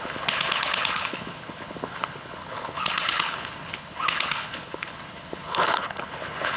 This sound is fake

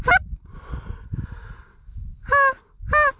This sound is real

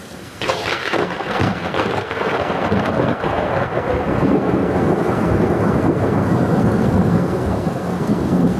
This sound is fake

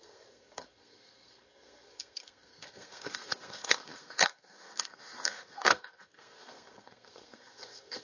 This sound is fake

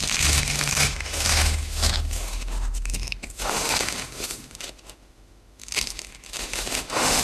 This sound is fake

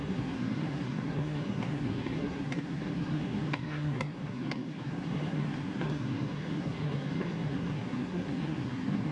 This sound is fake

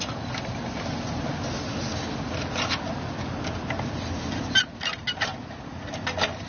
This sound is real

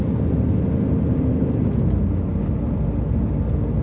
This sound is real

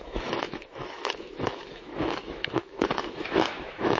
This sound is fake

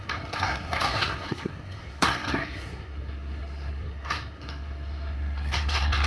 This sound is fake